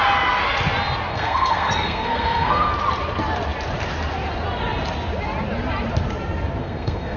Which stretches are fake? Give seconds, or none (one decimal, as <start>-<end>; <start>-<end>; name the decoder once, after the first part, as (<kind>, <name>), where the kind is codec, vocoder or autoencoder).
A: 1.1-2.7 (codec, SNAC); 6.6-7.2